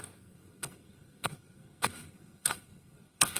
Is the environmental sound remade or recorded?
remade